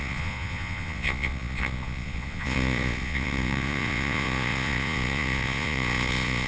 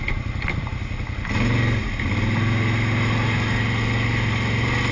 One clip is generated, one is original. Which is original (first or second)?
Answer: second